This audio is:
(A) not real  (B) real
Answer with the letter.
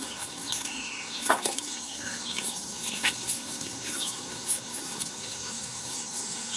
A